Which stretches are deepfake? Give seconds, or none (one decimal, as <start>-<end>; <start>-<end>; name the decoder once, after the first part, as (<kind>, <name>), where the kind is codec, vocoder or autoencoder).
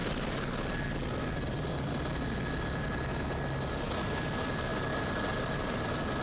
3.7-4.7 (vocoder, BigVGAN v2); 5.3-6.2